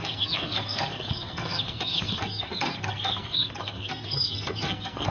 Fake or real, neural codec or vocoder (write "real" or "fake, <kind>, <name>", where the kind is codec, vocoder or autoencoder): fake, codec, SNAC